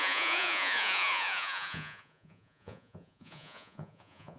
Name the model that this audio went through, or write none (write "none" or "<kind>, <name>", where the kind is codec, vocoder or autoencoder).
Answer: vocoder, Vocos